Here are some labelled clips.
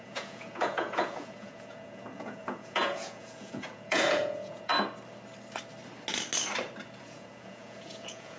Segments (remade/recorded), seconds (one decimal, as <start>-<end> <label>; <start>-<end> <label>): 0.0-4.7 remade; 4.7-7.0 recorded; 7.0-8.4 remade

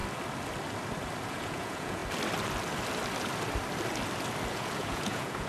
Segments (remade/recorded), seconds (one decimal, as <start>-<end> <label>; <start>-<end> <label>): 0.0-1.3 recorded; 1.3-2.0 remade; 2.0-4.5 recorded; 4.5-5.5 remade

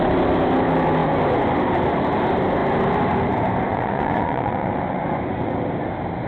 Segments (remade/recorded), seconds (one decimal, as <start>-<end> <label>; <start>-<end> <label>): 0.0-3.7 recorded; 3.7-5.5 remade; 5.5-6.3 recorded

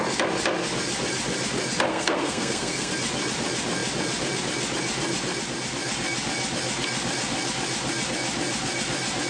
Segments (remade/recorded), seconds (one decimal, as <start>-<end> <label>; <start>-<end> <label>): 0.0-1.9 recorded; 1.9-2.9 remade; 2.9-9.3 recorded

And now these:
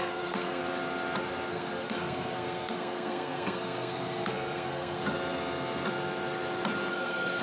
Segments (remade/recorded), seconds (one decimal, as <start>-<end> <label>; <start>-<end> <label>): 0.0-0.6 remade; 0.6-1.5 recorded; 1.5-5.0 remade; 5.0-6.9 recorded; 6.9-7.4 remade

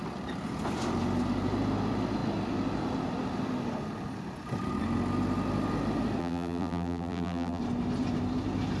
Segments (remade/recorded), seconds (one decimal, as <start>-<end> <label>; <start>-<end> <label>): 0.0-6.2 recorded; 6.2-7.6 remade; 7.6-8.8 recorded

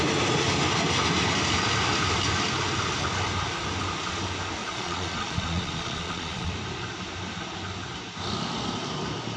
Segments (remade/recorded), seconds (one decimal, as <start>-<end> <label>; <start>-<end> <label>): 0.0-4.6 recorded; 4.6-6.5 remade; 6.5-9.4 recorded

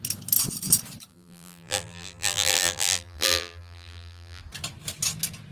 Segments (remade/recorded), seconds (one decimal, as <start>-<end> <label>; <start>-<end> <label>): 0.0-1.1 recorded; 1.1-4.4 remade; 4.4-5.5 recorded